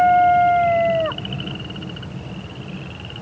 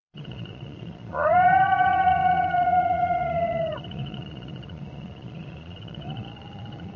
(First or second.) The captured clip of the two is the first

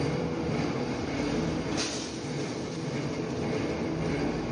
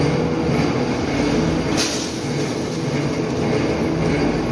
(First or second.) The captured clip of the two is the second